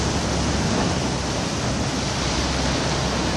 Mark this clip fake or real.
real